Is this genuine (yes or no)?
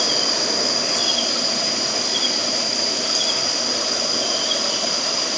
yes